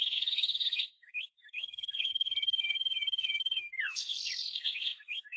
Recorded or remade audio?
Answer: remade